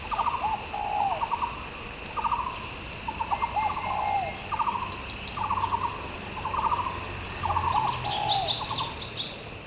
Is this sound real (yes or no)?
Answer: yes